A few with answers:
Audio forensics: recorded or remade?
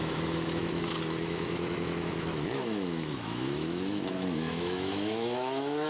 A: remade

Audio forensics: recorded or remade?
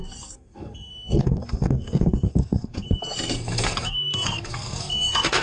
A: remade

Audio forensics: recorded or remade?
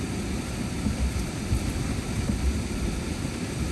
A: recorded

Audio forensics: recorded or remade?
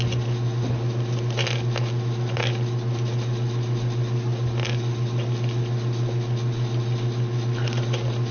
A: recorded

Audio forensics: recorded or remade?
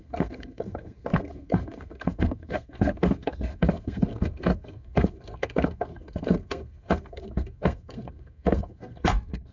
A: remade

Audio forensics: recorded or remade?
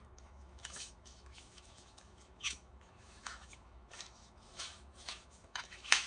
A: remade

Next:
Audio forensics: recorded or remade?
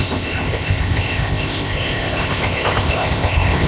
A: remade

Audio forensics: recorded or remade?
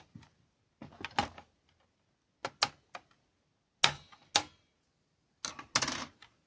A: recorded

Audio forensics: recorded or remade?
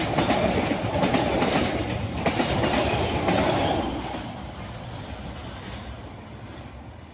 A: recorded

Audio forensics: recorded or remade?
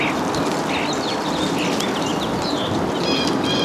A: recorded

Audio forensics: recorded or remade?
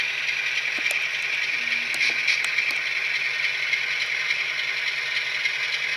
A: recorded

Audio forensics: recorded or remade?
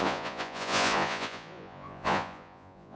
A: remade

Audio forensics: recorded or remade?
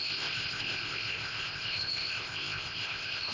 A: remade